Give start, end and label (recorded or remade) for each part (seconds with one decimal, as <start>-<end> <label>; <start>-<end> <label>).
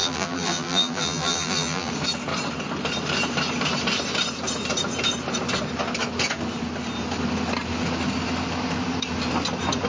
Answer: 0.0-1.9 remade; 1.9-9.9 recorded